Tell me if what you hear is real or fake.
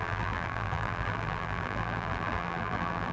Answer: fake